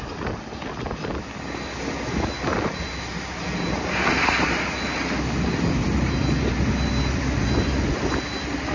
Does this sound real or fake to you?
real